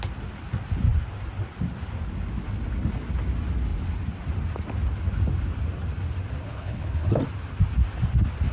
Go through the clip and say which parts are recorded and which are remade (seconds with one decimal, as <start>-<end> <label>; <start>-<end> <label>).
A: 0.0-6.4 recorded; 6.4-7.2 remade; 7.2-8.5 recorded